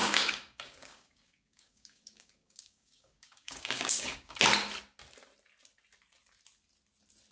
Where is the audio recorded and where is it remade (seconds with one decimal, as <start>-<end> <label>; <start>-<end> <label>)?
0.0-4.4 remade; 4.4-7.3 recorded